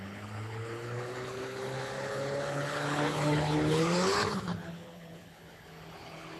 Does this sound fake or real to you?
fake